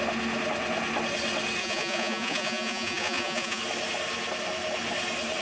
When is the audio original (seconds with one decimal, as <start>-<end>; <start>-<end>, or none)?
0.0-1.6; 3.6-5.4